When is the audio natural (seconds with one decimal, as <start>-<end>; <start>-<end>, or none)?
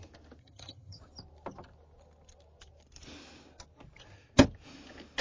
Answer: 0.0-0.4; 1.0-5.2